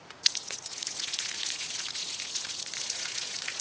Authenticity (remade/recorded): remade